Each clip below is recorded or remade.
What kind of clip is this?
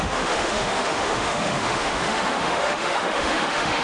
remade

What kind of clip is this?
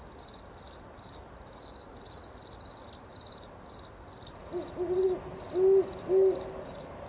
recorded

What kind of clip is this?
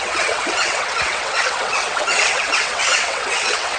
remade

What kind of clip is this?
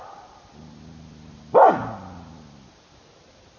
recorded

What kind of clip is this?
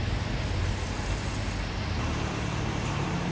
recorded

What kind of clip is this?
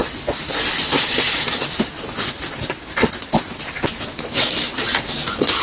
recorded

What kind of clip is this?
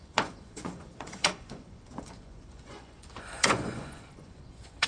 remade